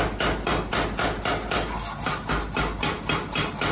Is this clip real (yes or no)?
yes